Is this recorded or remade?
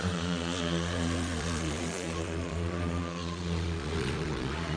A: remade